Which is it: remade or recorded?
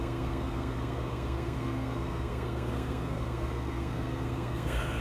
remade